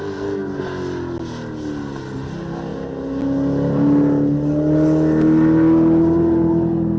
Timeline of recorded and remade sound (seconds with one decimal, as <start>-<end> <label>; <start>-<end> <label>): 0.0-0.6 remade; 0.6-7.0 recorded